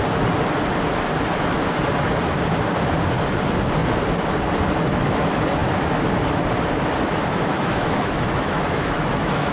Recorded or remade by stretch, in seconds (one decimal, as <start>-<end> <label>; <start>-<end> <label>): 0.0-7.5 recorded; 7.5-9.5 remade